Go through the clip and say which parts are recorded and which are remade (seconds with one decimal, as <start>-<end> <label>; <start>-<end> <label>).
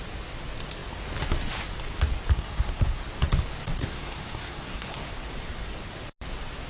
0.0-2.3 recorded; 2.3-3.0 remade; 3.0-3.8 recorded; 3.8-5.1 remade; 5.1-6.7 recorded